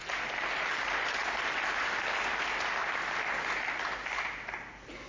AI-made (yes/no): no